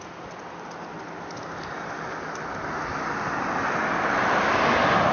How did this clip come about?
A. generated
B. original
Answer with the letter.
B